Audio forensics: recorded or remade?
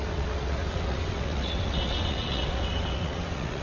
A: remade